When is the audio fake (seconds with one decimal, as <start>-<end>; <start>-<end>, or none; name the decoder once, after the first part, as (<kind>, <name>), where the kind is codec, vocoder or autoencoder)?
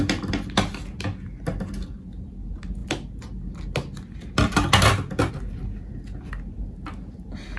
none